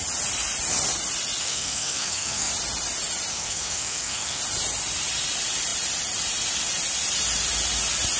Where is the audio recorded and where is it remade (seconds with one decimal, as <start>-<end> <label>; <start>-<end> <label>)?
0.0-1.4 recorded; 1.4-2.5 remade; 2.5-3.3 recorded; 3.3-4.4 remade; 4.4-8.2 recorded